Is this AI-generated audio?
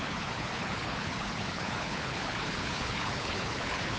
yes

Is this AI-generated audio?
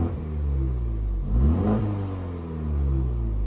no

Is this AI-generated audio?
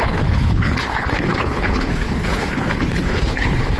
yes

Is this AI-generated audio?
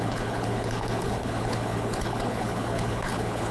yes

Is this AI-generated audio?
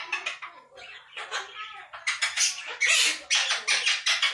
no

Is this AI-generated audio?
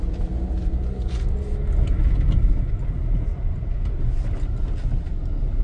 no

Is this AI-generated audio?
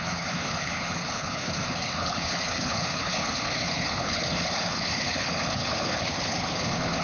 yes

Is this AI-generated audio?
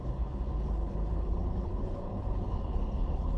yes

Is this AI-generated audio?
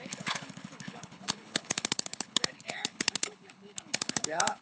yes